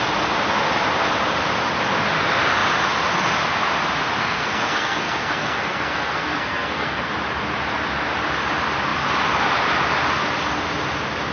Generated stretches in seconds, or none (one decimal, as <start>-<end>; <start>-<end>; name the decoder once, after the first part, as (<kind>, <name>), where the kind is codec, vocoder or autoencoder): 4.2-7.1 (codec, SNAC)